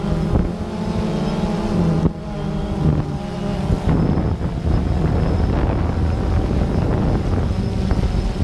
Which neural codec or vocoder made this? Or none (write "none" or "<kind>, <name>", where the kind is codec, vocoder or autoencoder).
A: none